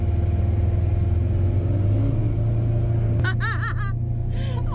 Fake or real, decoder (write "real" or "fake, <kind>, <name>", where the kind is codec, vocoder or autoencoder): real